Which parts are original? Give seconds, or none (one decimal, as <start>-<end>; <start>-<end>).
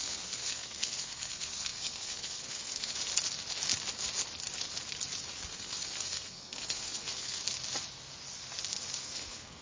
2.9-5.5; 7.4-9.0